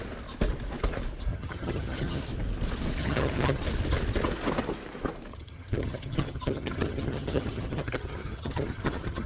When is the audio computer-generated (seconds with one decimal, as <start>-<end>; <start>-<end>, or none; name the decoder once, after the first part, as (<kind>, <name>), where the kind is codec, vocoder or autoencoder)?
1.3-2.2 (vocoder, HiFi-GAN); 3.0-3.6; 5.3-9.3